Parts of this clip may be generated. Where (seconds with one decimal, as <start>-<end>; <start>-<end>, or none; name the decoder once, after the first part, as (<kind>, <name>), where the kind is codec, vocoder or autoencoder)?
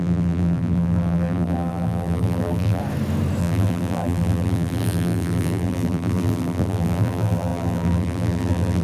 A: 0.0-2.8 (vocoder, BigVGAN v2); 3.4-8.8